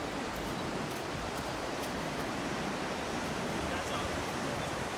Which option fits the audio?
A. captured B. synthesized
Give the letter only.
B